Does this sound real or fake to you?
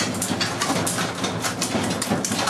real